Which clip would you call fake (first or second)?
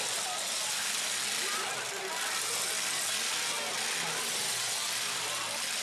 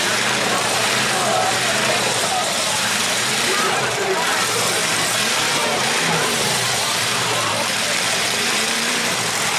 second